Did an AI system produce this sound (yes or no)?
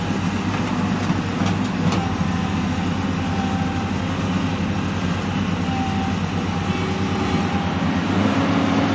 no